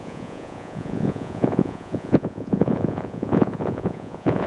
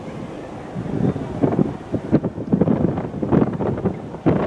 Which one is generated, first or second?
first